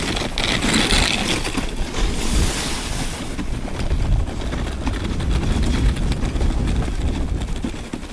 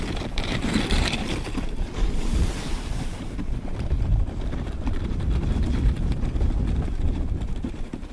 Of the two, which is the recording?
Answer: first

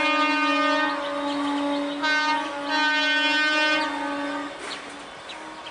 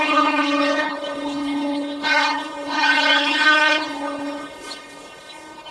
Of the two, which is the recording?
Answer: first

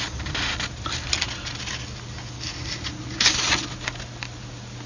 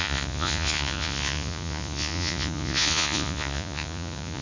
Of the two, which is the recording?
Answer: first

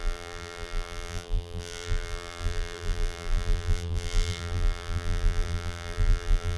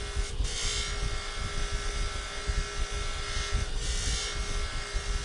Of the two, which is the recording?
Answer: second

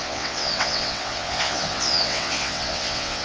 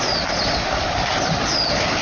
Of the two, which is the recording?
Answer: second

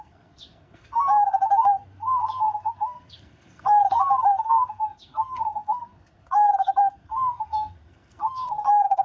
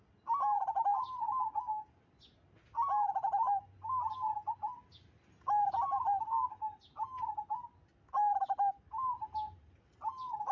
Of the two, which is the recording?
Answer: second